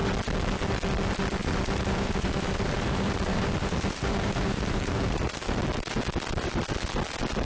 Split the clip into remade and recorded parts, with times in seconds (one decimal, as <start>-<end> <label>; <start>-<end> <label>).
0.0-1.4 recorded; 1.4-5.6 remade; 5.6-7.4 recorded